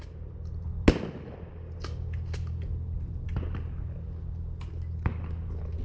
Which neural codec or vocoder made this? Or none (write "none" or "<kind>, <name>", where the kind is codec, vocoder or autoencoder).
none